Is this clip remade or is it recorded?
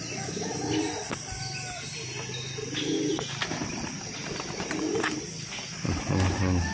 recorded